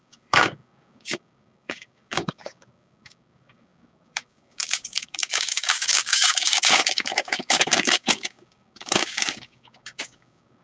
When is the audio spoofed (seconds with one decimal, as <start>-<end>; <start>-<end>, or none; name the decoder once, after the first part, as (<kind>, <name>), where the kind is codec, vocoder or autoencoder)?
0.0-10.6 (codec, DAC)